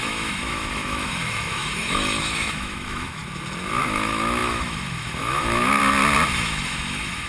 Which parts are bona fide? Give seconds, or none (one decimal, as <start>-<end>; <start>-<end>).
3.2-3.8; 5.8-6.3